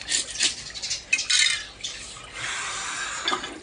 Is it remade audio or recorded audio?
recorded